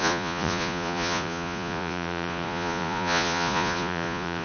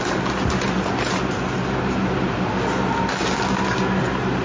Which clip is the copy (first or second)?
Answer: first